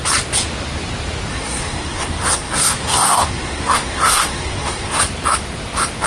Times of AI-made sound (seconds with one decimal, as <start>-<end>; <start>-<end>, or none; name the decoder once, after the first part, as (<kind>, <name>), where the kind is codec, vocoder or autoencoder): 1.3-5.0 (codec, SNAC)